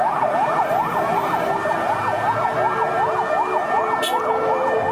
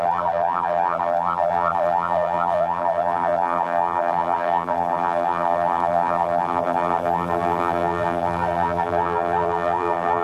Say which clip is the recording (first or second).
first